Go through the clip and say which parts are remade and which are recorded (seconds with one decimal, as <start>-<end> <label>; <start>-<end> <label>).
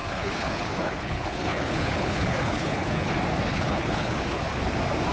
0.0-3.1 remade; 3.1-3.5 recorded; 3.5-4.6 remade; 4.6-5.1 recorded